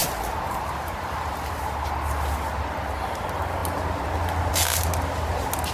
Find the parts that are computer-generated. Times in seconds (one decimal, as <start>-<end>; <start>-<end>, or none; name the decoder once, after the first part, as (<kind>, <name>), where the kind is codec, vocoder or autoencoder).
0.0-1.9 (vocoder, BigVGAN v2)